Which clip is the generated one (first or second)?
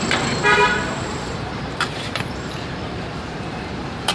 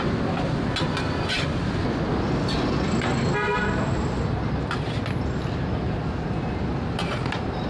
first